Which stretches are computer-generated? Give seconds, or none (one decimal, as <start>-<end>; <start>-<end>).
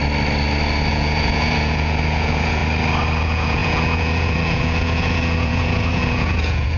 0.9-2.6; 3.2-6.8